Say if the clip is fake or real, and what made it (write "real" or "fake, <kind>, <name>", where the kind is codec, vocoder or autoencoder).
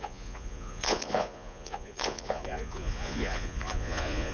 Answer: fake, vocoder, Vocos